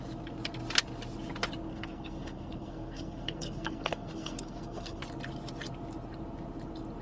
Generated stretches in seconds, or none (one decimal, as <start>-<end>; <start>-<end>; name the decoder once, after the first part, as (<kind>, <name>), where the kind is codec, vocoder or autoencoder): 1.7-5.0 (codec, SNAC)